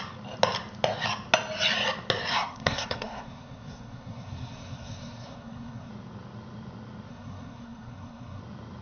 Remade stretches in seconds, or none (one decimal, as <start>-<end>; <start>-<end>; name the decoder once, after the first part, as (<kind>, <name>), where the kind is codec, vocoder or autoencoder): 2.3-5.9 (codec, SNAC); 7.1-8.4